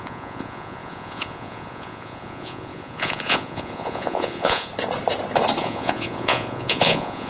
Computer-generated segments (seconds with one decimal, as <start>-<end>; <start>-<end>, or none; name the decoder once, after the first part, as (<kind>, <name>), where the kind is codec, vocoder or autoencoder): 0.0-4.7 (vocoder, Vocos); 5.6-7.3